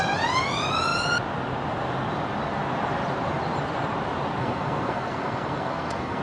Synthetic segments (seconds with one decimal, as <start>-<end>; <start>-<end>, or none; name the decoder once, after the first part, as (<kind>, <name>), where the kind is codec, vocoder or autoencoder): 4.4-6.2 (codec, SNAC)